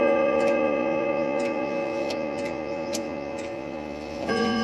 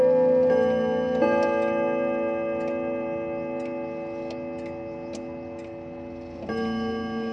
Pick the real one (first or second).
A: second